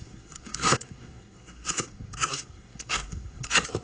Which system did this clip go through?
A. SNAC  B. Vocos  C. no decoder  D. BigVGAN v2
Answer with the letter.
A